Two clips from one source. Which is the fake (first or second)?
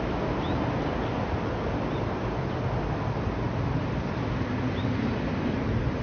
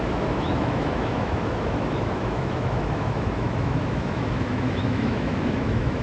second